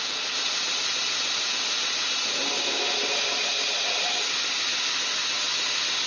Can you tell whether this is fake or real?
real